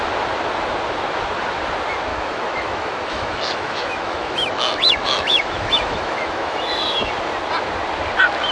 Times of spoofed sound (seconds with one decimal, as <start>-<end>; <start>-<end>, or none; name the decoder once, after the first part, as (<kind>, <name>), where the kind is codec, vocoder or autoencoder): 2.1-7.1 (autoencoder, DAC-VAE)